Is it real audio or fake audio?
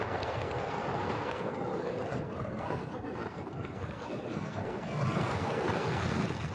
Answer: fake